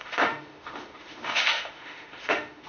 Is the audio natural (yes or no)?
no